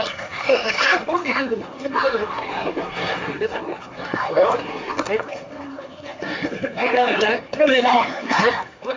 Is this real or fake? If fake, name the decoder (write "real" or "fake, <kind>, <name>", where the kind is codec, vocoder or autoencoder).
fake, codec, SNAC